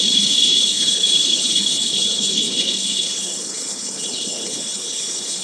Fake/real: fake